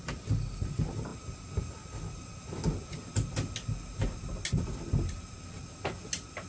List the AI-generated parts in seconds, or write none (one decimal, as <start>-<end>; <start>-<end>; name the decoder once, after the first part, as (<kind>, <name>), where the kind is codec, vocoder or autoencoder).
none